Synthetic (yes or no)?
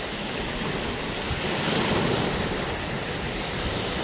yes